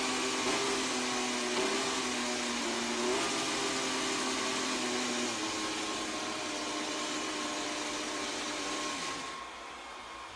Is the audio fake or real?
real